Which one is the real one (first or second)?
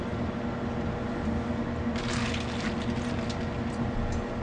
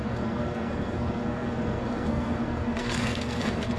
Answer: first